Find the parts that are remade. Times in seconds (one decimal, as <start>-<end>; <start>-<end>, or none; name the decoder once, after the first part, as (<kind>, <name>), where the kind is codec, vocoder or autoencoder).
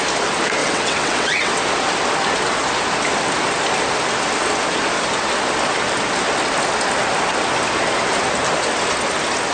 0.6-1.5 (vocoder, WaveNeXt)